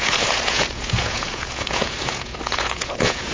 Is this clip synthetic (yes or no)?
yes